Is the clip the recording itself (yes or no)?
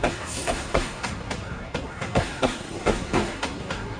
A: no